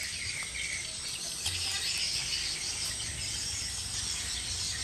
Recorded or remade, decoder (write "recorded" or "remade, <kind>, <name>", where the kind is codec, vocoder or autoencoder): recorded